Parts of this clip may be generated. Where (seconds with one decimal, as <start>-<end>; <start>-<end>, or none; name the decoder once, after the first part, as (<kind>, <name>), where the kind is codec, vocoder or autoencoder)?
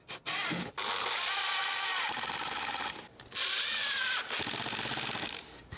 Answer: 1.9-2.5 (vocoder, BigVGAN v2); 3.4-4.3